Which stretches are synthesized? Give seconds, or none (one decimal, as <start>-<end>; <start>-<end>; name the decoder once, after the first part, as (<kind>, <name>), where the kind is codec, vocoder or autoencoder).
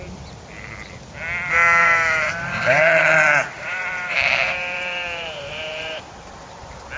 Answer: 1.8-6.0 (vocoder, BigVGAN v2)